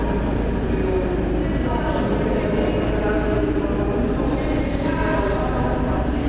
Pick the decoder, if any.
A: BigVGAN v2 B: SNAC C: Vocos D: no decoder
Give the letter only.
D